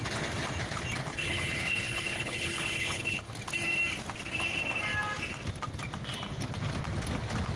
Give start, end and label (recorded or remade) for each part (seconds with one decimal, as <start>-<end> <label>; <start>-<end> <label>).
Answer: 0.0-1.1 recorded; 1.1-3.3 remade; 3.3-7.6 recorded